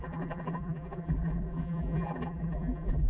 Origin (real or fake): fake